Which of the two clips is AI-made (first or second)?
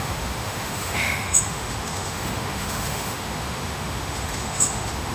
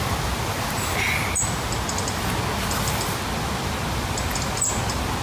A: first